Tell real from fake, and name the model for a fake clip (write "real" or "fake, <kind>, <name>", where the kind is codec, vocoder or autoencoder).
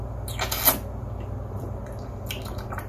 real